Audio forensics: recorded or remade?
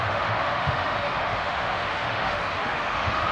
remade